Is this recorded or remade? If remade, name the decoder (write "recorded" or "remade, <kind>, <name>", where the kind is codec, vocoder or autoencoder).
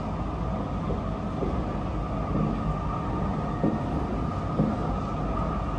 recorded